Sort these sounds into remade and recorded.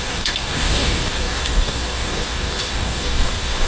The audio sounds remade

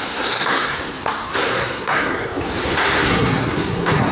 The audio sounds remade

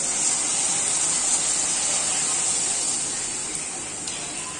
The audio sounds recorded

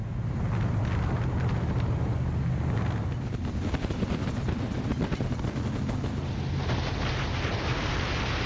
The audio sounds recorded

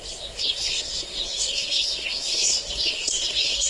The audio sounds remade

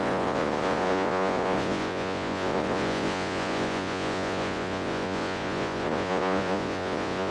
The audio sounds remade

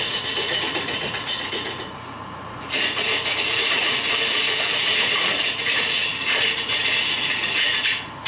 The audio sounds remade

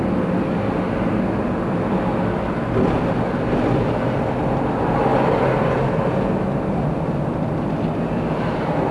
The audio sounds recorded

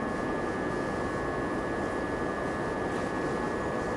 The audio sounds recorded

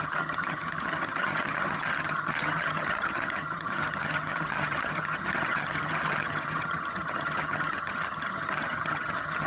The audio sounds remade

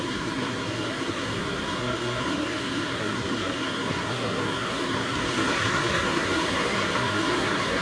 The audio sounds remade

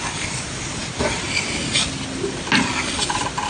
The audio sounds recorded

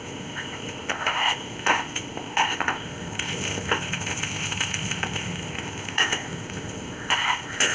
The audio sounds remade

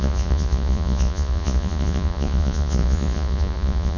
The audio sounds remade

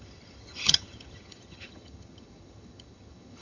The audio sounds remade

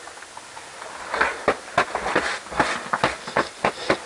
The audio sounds recorded